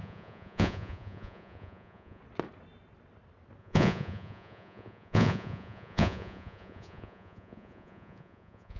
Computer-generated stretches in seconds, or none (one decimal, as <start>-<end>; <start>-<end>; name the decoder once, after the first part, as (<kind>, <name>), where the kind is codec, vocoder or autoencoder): 0.0-2.2 (vocoder, Vocos); 3.6-8.8